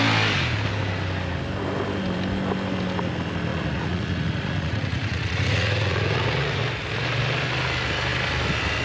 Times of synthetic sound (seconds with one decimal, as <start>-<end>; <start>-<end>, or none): 3.5-6.6